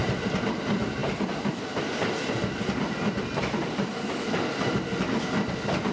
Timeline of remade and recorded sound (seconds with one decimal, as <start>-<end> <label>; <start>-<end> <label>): 0.0-0.6 remade; 0.6-5.9 recorded